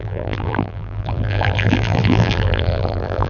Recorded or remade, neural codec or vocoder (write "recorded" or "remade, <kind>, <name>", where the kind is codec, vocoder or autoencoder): remade, vocoder, BigVGAN v2